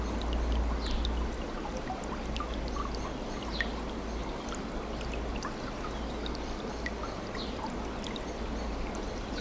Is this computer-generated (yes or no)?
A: no